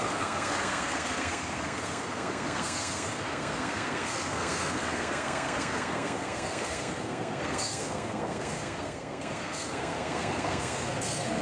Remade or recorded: remade